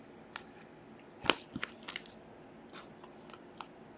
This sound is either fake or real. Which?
real